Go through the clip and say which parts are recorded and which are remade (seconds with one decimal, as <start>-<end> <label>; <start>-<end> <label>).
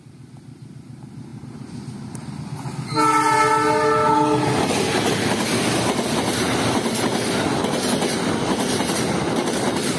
0.0-10.0 recorded